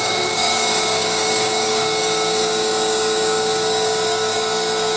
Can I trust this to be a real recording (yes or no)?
no